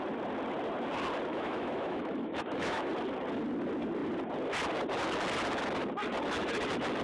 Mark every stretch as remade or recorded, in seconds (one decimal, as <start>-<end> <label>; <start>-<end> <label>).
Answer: 0.0-1.3 recorded; 1.3-2.9 remade; 2.9-7.0 recorded